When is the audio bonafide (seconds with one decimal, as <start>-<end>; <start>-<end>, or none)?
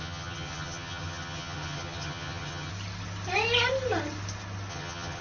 2.7-4.7